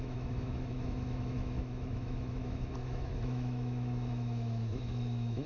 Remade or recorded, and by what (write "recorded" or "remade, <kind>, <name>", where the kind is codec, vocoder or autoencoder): remade, autoencoder, DAC-VAE